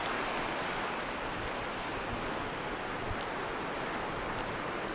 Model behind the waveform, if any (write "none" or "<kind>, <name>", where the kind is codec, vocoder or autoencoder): none